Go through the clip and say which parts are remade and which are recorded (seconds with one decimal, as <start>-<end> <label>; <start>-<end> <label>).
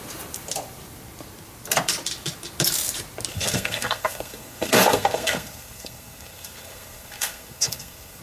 0.0-3.3 recorded; 3.3-8.2 remade